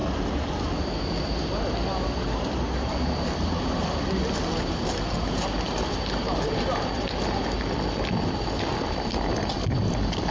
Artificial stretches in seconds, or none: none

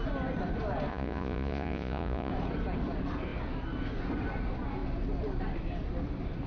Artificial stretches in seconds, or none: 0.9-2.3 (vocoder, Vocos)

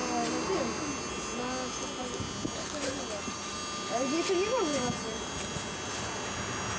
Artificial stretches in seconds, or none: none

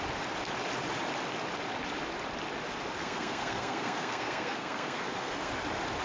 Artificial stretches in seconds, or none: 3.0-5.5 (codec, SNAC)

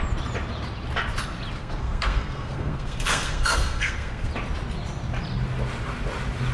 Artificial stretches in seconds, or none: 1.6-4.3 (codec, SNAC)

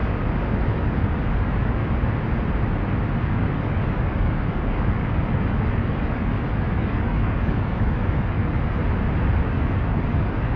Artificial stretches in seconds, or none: 0.0-1.8 (codec, DAC); 3.2-8.8; 9.4-10.6

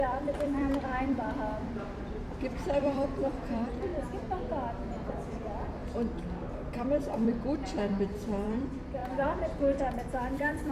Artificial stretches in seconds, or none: 0.0-3.9 (vocoder, BigVGAN v2); 5.1-5.8; 6.7-10.7